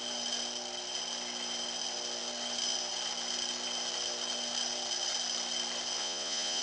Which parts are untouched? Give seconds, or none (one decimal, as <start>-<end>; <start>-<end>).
0.0-6.0